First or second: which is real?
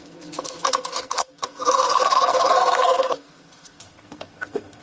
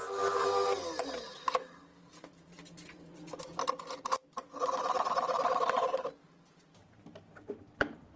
second